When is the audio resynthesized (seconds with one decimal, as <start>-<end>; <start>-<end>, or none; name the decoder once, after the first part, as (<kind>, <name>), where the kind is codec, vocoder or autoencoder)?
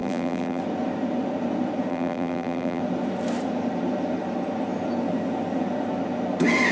0.0-0.6 (vocoder, BigVGAN v2); 1.9-2.8